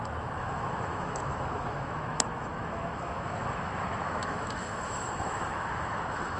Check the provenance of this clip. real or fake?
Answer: fake